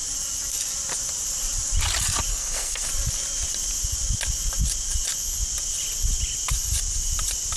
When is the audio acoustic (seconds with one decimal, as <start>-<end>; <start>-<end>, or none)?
0.0-2.3; 2.9-7.6